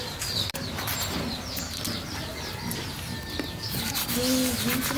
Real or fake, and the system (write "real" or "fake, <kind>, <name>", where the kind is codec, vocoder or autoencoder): real